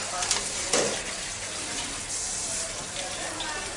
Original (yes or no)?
yes